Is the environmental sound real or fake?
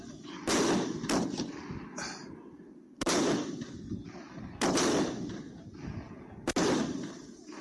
real